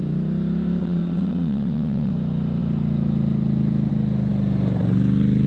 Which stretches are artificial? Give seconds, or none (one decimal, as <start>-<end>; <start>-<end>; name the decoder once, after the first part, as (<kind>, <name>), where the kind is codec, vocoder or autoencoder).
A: 0.8-2.1 (vocoder, WaveNeXt)